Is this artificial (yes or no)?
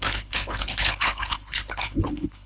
yes